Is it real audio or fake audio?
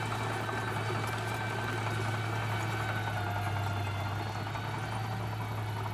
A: real